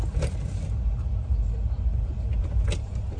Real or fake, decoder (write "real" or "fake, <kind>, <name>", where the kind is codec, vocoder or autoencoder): real